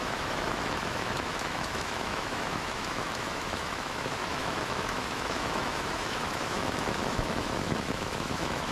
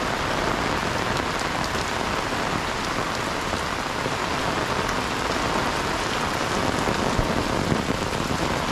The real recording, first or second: second